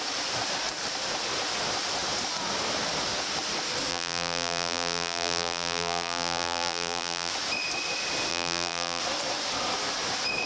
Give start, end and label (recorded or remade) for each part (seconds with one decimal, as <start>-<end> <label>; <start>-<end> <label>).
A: 0.0-3.9 recorded; 3.9-7.3 remade; 7.3-8.3 recorded; 8.3-9.0 remade; 9.0-10.5 recorded